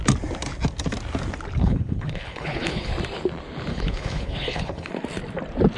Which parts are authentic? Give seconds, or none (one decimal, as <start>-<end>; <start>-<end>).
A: 0.0-1.6; 2.9-3.7; 4.9-5.8